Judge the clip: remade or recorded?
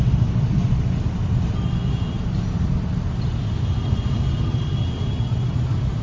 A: recorded